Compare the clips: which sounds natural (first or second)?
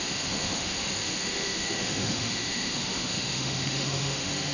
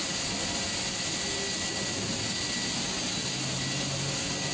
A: second